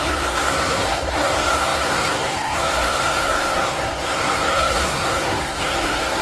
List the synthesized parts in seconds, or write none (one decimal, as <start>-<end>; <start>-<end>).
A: 0.0-6.2